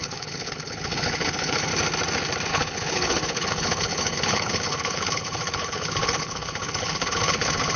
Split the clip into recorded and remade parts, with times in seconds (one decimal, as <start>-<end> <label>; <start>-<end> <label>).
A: 0.0-1.7 remade; 1.7-2.5 recorded; 2.5-7.8 remade